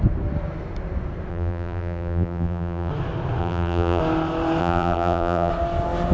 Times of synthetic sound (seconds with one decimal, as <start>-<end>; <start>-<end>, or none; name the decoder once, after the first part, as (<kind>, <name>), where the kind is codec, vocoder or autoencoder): 1.3-2.9 (vocoder, BigVGAN v2); 3.4-4.0; 4.6-5.5